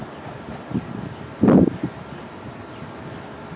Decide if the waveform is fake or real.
real